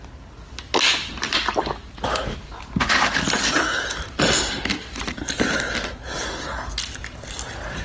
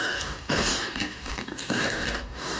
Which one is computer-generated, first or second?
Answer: second